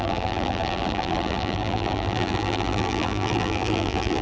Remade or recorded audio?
remade